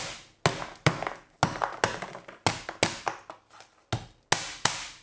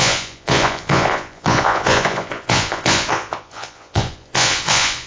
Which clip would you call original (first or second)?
first